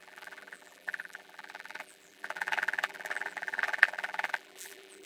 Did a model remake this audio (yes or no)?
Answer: yes